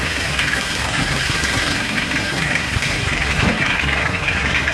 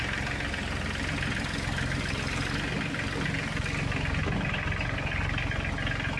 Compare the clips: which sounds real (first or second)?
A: second